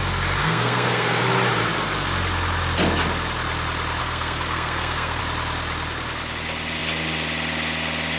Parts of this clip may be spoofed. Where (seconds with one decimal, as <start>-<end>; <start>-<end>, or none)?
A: 0.4-1.2; 4.0-5.2

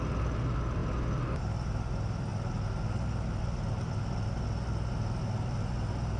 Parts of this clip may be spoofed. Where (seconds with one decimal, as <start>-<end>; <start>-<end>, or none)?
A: none

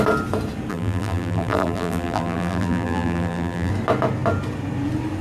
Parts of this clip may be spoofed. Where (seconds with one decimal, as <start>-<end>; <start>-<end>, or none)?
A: 0.7-3.7

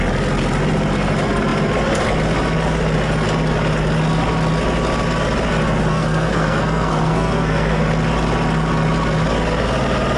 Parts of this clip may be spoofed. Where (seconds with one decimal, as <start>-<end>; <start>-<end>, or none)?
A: 5.9-7.8

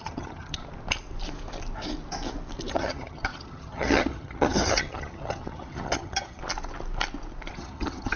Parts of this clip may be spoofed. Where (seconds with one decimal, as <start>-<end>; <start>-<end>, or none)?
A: 0.0-0.6; 2.7-6.4; 7.5-8.2